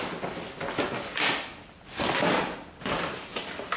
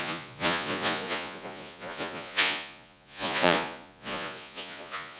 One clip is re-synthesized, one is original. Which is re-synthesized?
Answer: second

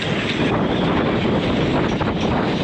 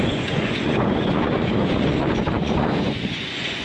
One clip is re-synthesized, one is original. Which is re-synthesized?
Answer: second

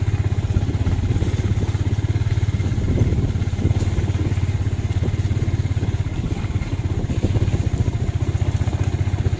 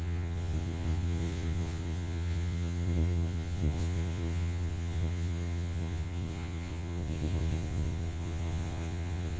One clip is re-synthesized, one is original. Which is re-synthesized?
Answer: second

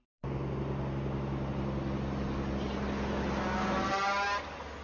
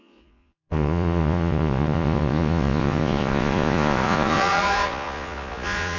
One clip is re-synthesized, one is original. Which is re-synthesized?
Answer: second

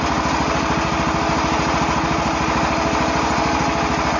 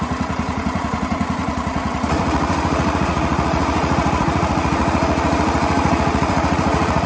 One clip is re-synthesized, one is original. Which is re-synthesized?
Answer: second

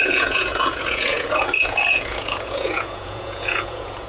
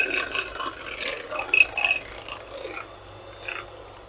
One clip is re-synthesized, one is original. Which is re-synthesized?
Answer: first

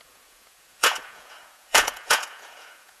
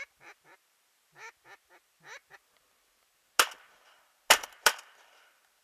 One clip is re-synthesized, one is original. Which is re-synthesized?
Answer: first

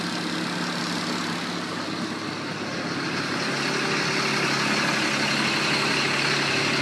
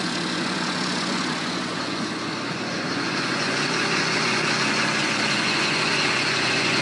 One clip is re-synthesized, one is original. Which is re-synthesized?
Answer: second